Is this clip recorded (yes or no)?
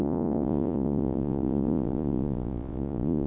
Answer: no